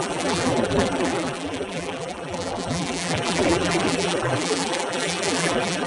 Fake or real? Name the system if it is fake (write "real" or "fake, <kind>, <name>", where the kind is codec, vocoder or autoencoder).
fake, vocoder, BigVGAN v2